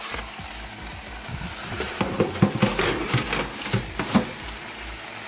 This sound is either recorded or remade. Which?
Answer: recorded